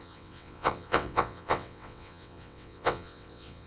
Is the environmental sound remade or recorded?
remade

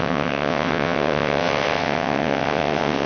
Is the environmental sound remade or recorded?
remade